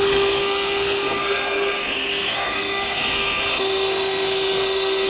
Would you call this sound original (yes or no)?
no